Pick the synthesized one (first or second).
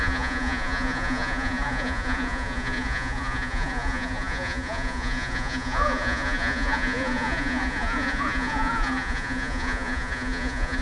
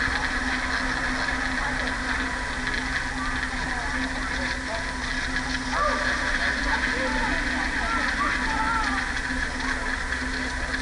first